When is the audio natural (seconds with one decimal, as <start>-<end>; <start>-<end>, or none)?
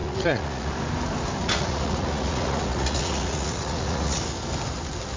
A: 0.7-1.4; 4.2-5.2